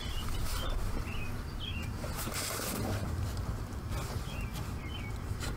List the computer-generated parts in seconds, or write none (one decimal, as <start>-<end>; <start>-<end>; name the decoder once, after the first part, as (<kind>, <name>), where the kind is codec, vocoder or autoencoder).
0.4-1.1 (vocoder, BigVGAN v2); 1.7-2.4